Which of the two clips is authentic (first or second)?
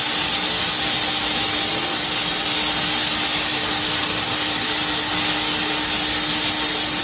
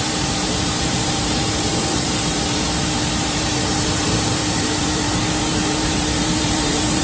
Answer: first